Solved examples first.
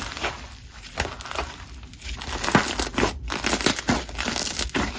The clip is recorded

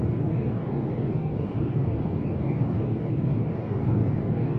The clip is remade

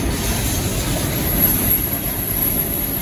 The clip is remade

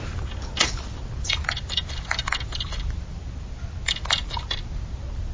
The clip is recorded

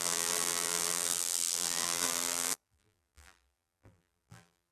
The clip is remade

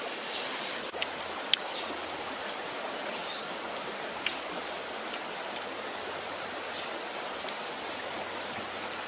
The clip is recorded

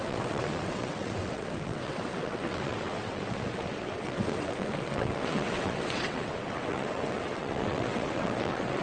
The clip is remade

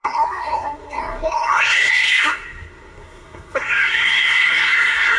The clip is remade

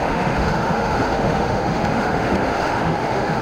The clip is remade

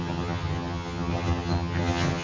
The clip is remade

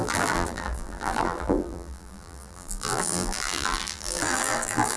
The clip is remade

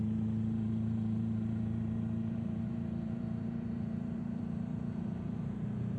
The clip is remade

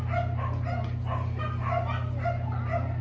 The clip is recorded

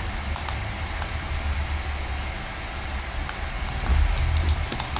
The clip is recorded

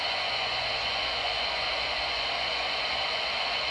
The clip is remade